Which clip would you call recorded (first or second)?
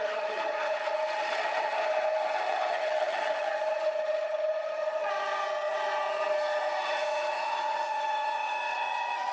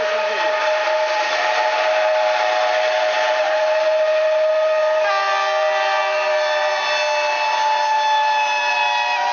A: second